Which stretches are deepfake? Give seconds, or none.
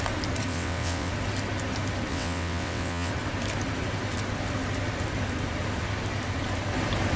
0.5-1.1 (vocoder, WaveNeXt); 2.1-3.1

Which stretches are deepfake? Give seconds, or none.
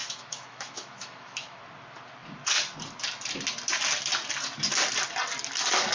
0.0-1.6 (autoencoder, DAC-VAE)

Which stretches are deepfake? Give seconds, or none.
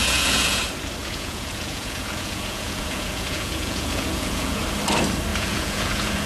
0.0-0.6 (vocoder, Vocos); 1.0-4.6; 5.3-6.3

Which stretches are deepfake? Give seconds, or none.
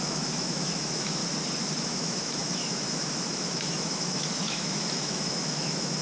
0.0-1.2 (autoencoder, DAC-VAE); 1.8-6.0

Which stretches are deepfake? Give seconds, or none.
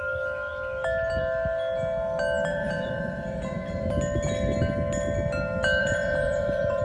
2.5-3.9 (vocoder, Vocos); 5.8-6.8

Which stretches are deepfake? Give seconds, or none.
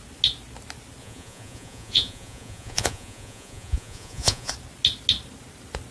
1.0-4.5 (vocoder, Vocos)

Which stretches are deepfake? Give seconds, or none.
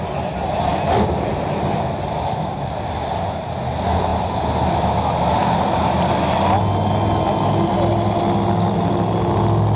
none